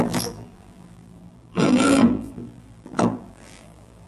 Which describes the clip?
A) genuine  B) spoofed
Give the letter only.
B